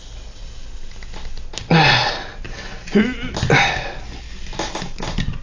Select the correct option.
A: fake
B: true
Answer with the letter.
B